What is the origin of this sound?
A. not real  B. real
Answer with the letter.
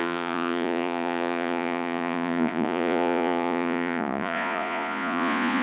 A